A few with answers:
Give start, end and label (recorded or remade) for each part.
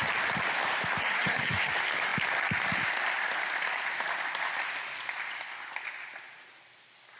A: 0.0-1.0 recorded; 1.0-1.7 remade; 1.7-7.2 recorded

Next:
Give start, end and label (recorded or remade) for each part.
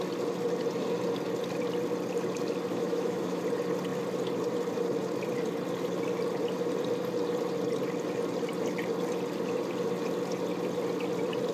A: 0.0-2.7 recorded; 2.7-3.4 remade; 3.4-11.5 recorded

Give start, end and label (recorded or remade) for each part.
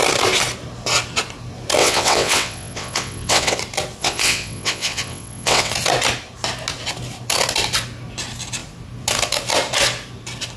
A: 0.0-1.8 recorded; 1.8-3.6 remade; 3.6-4.0 recorded; 4.0-5.7 remade; 5.7-10.6 recorded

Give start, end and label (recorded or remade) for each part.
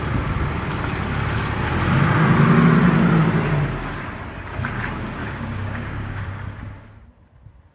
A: 0.0-5.2 recorded; 5.2-6.2 remade; 6.2-7.7 recorded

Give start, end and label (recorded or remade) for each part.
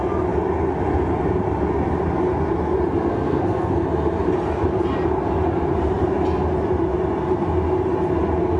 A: 0.0-3.1 recorded; 3.1-3.7 remade; 3.7-8.6 recorded